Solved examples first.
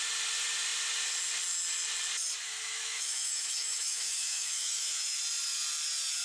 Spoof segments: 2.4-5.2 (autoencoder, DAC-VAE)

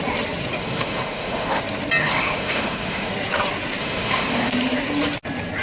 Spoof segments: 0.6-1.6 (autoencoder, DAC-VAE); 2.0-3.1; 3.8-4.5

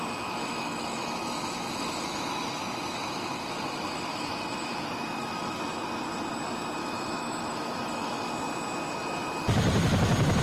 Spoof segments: 0.4-5.6 (autoencoder, DAC-VAE); 6.8-8.3